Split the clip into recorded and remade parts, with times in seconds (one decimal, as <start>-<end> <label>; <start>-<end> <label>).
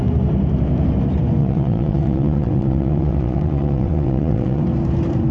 0.0-1.4 recorded; 1.4-4.6 remade; 4.6-5.3 recorded